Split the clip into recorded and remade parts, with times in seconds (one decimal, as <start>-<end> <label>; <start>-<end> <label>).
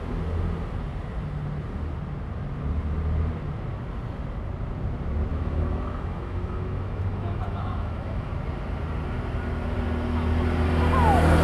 0.0-5.3 recorded; 5.3-8.3 remade; 8.3-11.4 recorded